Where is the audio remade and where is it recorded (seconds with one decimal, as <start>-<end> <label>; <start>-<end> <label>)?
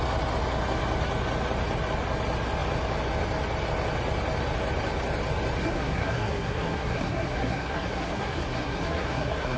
0.0-5.6 recorded; 5.6-9.6 remade